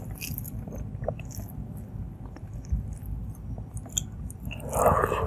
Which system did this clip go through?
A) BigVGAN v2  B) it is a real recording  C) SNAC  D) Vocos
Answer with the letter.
B